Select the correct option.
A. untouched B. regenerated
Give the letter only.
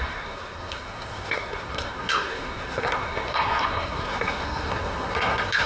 B